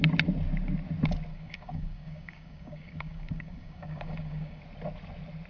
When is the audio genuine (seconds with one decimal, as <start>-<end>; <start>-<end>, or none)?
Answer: 0.0-1.3; 4.6-5.5